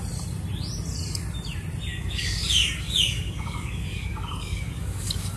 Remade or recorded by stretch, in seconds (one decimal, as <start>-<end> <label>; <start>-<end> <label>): 0.0-1.9 recorded; 1.9-5.4 remade